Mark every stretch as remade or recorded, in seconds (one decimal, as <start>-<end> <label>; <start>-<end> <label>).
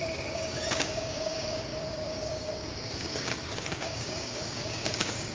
0.0-5.3 remade